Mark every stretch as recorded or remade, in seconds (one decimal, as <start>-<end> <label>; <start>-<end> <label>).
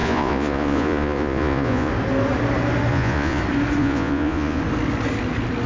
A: 0.0-1.9 remade; 1.9-2.9 recorded; 2.9-3.4 remade; 3.4-3.8 recorded; 3.8-4.6 remade; 4.6-5.7 recorded